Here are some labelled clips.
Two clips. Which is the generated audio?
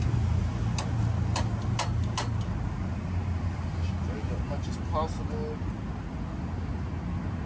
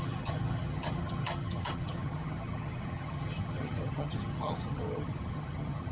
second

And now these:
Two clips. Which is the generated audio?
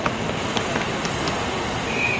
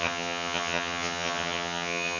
second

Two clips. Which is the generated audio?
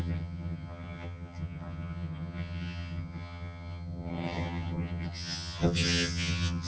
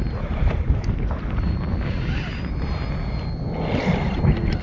first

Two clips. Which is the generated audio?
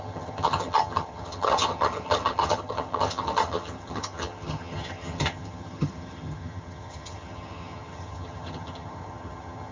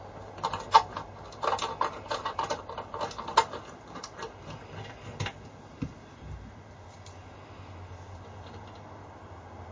first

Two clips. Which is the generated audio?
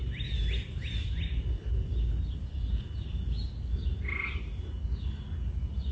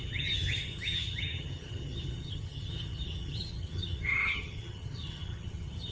second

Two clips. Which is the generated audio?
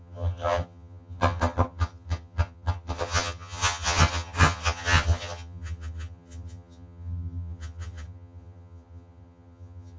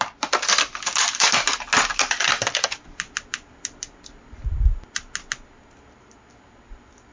first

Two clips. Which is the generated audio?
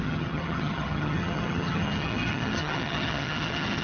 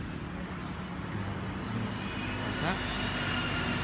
first